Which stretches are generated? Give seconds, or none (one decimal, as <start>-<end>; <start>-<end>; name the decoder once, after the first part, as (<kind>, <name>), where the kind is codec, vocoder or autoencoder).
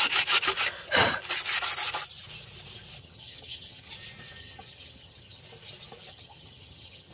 3.0-3.9 (vocoder, HiFi-GAN); 4.4-5.4; 6.1-7.1